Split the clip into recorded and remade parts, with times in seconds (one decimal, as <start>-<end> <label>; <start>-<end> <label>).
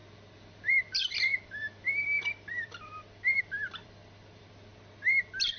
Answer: 0.0-4.7 remade; 4.7-5.6 recorded